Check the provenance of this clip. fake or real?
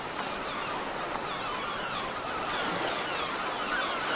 real